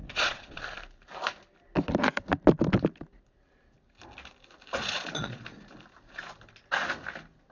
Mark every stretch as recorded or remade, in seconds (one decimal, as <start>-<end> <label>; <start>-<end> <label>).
0.0-0.6 remade; 0.6-4.8 recorded; 4.8-5.4 remade; 5.4-7.5 recorded